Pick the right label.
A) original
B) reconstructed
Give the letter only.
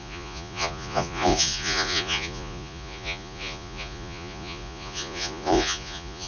B